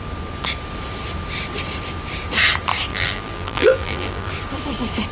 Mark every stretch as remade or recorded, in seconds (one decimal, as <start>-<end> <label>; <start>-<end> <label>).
0.0-2.9 recorded; 2.9-4.3 remade; 4.3-5.1 recorded